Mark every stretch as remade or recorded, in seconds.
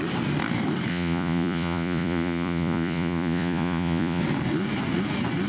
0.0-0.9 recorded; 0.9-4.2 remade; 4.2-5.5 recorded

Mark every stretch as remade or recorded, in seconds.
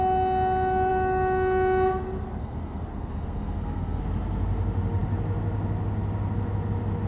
0.0-2.4 recorded; 2.4-4.0 remade; 4.0-7.1 recorded